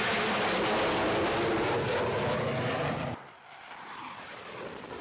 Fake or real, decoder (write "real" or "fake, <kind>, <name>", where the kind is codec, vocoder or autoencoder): real